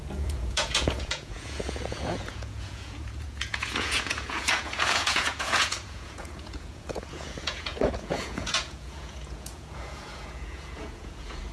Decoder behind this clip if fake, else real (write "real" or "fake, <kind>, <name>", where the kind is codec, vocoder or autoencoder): fake, vocoder, Vocos